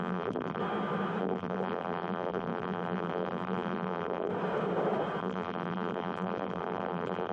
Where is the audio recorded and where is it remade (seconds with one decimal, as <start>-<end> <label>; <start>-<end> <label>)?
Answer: 0.0-0.6 remade; 0.6-1.2 recorded; 1.2-4.3 remade; 4.3-5.2 recorded; 5.2-7.3 remade